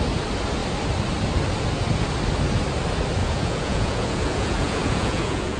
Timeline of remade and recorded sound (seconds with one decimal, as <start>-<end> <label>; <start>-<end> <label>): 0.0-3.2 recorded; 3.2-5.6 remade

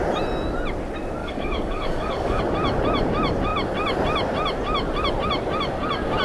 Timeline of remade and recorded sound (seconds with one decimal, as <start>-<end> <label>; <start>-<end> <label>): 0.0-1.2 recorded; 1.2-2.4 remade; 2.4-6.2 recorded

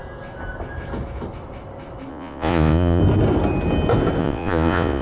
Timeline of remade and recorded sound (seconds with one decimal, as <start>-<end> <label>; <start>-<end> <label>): 0.0-2.1 recorded; 2.1-3.0 remade; 3.0-4.2 recorded; 4.2-5.0 remade